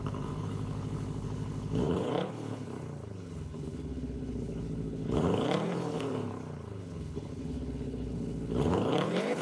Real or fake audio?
fake